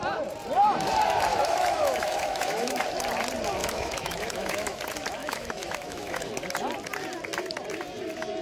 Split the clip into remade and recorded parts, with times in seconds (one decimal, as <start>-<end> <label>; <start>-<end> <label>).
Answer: 0.0-1.3 recorded; 1.3-2.8 remade; 2.8-3.6 recorded; 3.6-4.8 remade; 4.8-5.2 recorded; 5.2-6.3 remade; 6.3-8.4 recorded